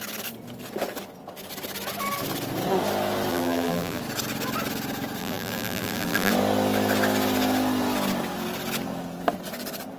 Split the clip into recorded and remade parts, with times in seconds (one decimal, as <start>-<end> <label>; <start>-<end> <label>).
0.0-3.3 recorded; 3.3-4.0 remade; 4.0-5.2 recorded; 5.2-6.3 remade; 6.3-10.0 recorded